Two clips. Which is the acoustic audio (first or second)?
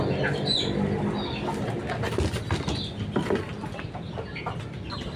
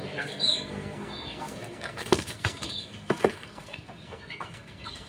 first